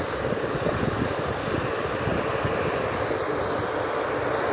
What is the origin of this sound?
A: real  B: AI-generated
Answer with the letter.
A